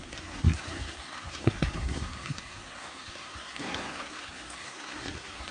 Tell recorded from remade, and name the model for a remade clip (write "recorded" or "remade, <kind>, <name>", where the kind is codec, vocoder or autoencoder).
remade, codec, SNAC